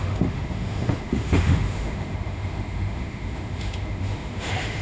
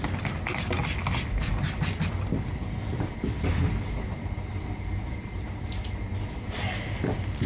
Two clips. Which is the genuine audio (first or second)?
second